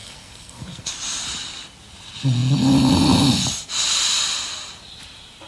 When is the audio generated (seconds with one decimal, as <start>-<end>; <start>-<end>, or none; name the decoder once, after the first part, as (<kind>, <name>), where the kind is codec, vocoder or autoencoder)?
0.0-0.9 (codec, SNAC)